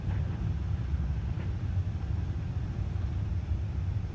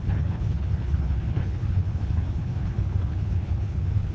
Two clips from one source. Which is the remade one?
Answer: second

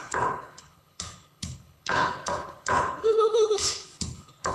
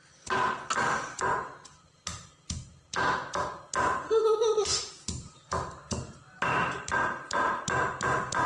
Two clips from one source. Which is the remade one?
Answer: first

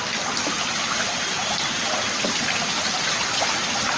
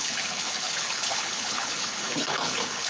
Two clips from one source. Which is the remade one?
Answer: second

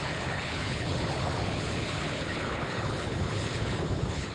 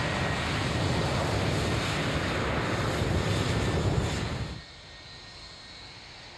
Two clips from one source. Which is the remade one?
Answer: first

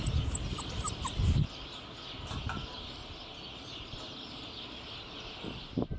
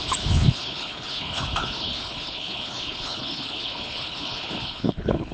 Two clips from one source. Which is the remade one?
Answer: second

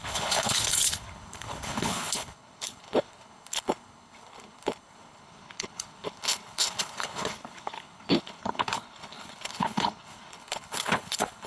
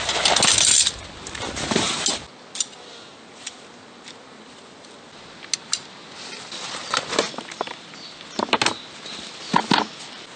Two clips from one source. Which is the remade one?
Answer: first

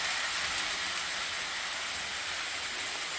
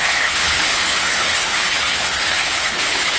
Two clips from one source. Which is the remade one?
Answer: second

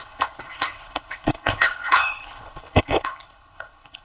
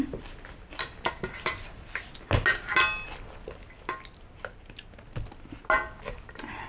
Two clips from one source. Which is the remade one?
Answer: first